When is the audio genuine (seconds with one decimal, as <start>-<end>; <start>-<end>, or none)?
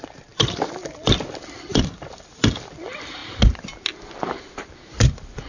3.2-5.5